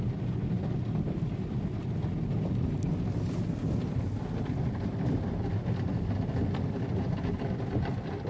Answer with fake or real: real